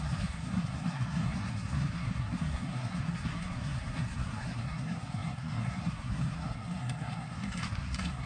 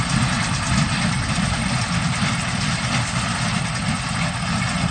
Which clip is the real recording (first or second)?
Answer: second